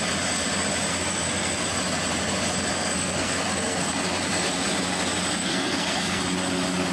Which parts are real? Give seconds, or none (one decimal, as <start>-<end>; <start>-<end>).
0.0-0.9; 1.6-2.7; 4.0-5.4; 6.2-6.9

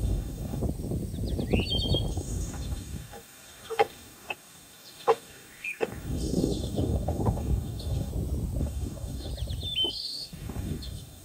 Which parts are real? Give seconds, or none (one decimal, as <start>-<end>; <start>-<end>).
0.6-2.1; 8.1-8.6; 9.3-9.9

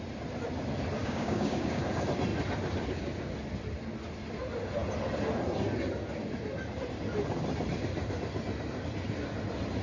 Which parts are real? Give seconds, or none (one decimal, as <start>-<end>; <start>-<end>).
0.0-1.0; 1.8-9.8